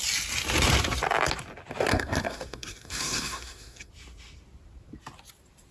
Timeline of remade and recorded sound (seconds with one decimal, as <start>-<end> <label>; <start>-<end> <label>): 0.0-1.9 recorded; 1.9-3.9 remade; 3.9-5.7 recorded